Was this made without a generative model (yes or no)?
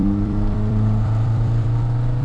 no